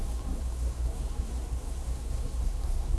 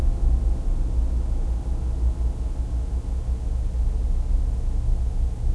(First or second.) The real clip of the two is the second